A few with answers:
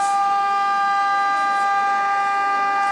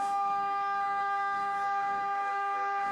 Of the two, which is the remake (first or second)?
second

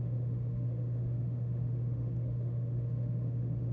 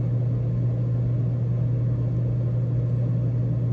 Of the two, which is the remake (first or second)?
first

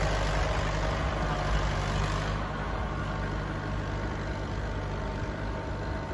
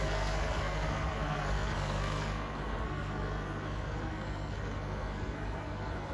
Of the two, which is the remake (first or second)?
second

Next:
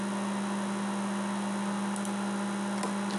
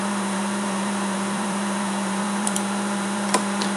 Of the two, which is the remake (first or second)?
second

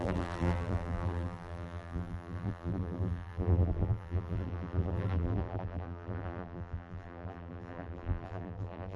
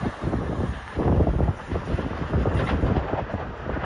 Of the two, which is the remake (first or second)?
first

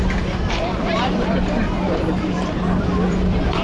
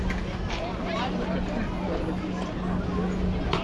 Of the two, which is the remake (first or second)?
first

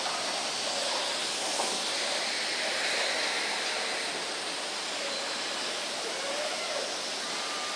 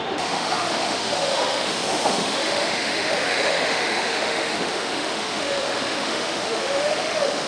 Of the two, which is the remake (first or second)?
second